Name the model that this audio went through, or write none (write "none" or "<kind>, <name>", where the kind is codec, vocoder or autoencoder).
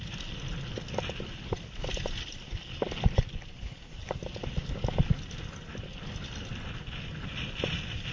none